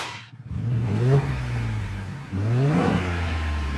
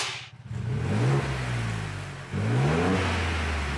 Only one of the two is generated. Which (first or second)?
first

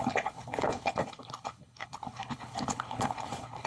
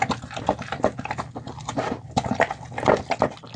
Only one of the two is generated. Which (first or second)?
first